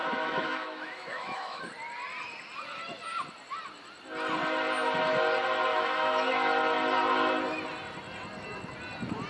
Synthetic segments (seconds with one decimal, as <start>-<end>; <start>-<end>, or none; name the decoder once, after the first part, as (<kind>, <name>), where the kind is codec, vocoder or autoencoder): 0.0-1.7 (autoencoder, DAC-VAE); 5.7-6.3